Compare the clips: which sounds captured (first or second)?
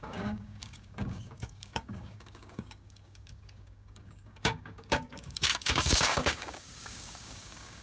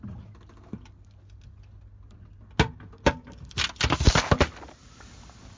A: second